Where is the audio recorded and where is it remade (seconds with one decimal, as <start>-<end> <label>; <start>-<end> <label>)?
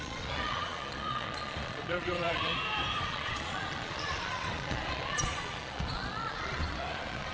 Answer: 0.0-2.5 remade; 2.5-3.0 recorded; 3.0-7.3 remade